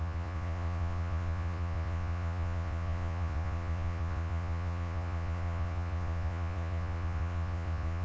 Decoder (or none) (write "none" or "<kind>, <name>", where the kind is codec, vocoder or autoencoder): vocoder, Vocos